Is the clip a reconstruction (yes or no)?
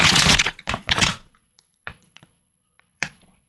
yes